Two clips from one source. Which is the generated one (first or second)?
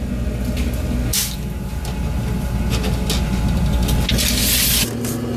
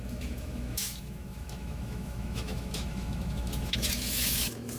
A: second